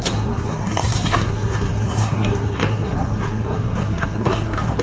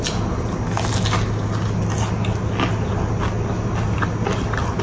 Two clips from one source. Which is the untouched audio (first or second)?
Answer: second